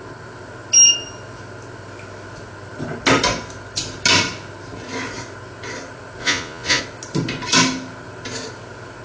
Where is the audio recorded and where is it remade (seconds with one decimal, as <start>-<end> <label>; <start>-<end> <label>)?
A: 0.0-6.2 recorded; 6.2-6.8 remade; 6.8-9.0 recorded